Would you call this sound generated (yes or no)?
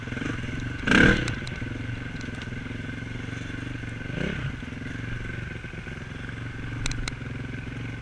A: no